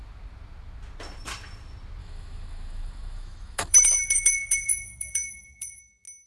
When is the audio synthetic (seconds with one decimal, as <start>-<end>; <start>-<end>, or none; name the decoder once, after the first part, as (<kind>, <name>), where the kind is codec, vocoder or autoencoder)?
2.0-5.8 (autoencoder, DAC-VAE)